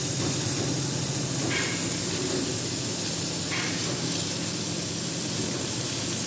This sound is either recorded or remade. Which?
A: recorded